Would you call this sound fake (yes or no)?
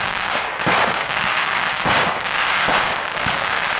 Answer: yes